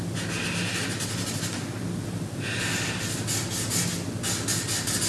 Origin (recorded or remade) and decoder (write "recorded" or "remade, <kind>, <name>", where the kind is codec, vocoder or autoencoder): recorded